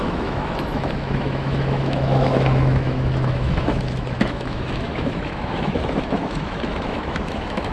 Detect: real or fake fake